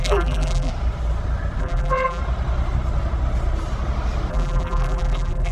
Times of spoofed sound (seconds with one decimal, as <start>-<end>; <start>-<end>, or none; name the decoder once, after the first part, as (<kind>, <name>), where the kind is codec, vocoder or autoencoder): 0.0-0.7 (vocoder, BigVGAN v2); 1.6-2.2; 4.3-5.5